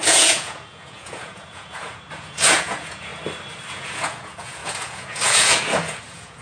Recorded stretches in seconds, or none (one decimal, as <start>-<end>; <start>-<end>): 3.1-3.7